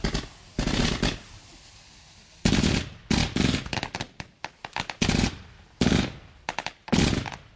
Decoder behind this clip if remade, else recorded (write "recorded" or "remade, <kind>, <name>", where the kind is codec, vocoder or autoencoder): recorded